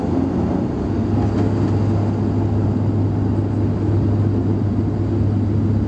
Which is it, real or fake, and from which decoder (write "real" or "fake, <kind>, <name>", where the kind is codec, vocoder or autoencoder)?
real